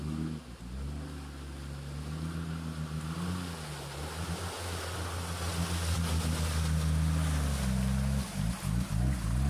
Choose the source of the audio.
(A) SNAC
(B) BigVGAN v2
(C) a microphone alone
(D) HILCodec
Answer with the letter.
C